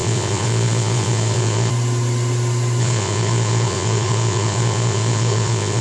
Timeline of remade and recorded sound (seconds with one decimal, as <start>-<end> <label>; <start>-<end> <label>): 0.0-1.7 remade; 1.7-2.8 recorded; 2.8-5.8 remade